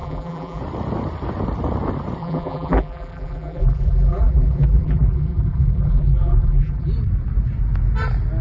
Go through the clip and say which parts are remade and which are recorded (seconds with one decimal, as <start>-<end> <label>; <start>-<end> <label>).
0.0-0.6 remade; 0.6-2.2 recorded; 2.2-6.9 remade; 6.9-8.4 recorded